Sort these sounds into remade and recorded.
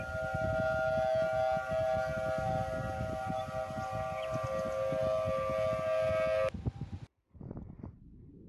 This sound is recorded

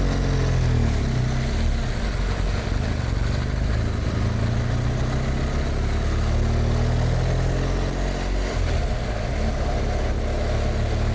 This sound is recorded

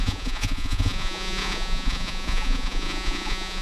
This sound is remade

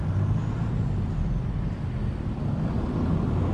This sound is recorded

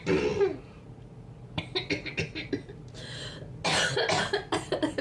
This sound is recorded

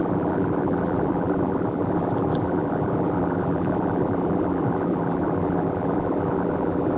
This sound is remade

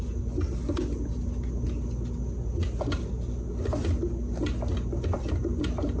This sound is recorded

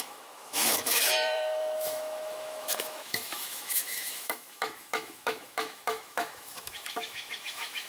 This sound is remade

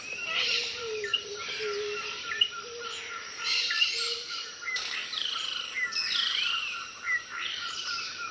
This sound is remade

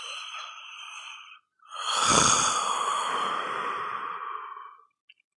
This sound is recorded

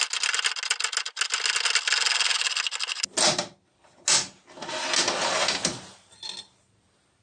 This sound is recorded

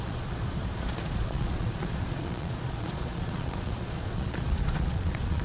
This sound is remade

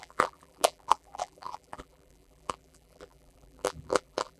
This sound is remade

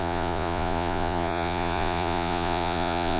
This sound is remade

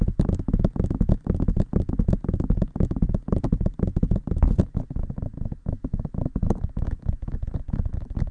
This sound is recorded